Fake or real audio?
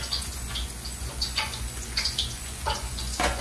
fake